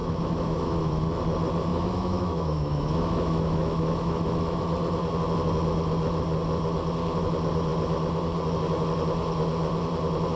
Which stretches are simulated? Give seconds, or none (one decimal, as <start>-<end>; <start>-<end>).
0.0-0.9; 1.7-4.6